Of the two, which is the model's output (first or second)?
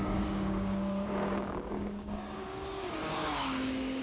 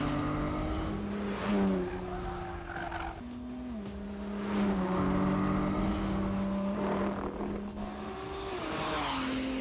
first